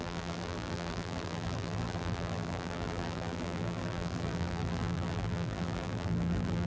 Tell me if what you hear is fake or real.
fake